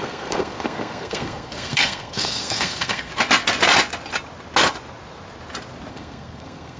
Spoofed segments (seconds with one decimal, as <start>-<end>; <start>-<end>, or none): 0.0-3.1; 5.9-6.8